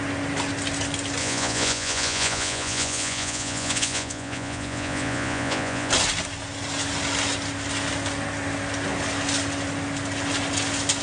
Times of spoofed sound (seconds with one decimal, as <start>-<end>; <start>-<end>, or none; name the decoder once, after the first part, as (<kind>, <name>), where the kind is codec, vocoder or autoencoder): 1.2-5.9 (vocoder, Vocos)